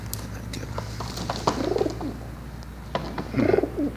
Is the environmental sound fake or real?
real